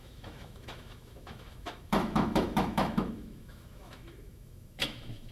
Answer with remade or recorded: remade